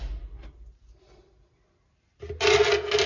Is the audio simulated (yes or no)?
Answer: no